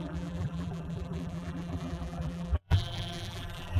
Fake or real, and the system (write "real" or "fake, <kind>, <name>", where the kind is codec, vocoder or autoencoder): fake, vocoder, BigVGAN v2